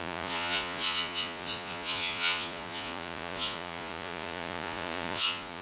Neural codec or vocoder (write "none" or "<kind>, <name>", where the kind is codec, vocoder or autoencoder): vocoder, Vocos